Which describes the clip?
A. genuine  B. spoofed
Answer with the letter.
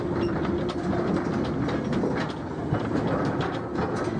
A